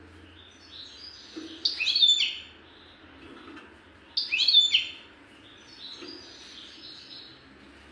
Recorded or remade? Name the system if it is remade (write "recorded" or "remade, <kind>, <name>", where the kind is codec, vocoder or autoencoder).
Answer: recorded